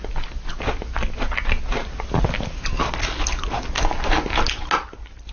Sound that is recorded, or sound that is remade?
recorded